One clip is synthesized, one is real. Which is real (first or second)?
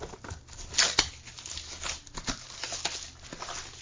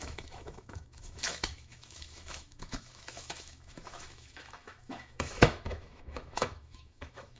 first